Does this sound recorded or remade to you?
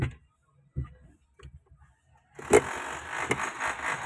recorded